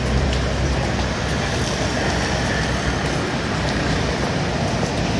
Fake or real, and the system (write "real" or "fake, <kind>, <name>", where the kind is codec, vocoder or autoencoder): fake, vocoder, BigVGAN v2